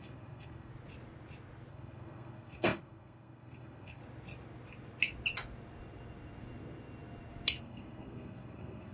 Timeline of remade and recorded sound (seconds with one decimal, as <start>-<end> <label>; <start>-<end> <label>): 0.0-0.7 remade; 0.7-1.7 recorded; 1.7-4.0 remade; 4.0-7.6 recorded; 7.6-8.9 remade